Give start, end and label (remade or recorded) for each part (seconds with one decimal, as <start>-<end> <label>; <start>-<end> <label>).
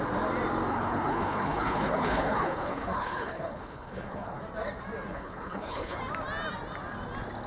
0.0-0.7 recorded; 0.7-4.4 remade; 4.4-5.1 recorded; 5.1-6.0 remade; 6.0-7.5 recorded